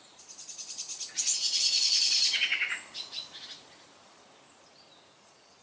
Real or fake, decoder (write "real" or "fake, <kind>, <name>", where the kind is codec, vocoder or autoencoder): fake, vocoder, Vocos